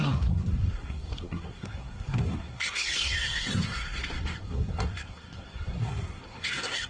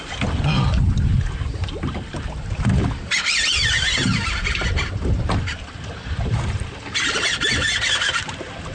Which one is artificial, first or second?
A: first